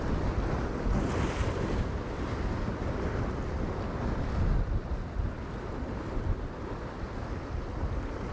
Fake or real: real